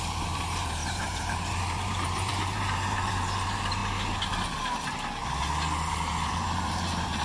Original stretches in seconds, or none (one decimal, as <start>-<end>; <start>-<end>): 3.8-5.9